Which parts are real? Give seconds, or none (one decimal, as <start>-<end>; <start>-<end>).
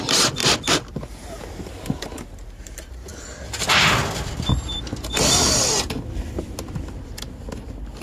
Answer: 0.0-0.4; 1.1-3.1; 7.2-8.0